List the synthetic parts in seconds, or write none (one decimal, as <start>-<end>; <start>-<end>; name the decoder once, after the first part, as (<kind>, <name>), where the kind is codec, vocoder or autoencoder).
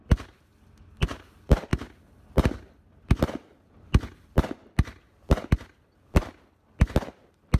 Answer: none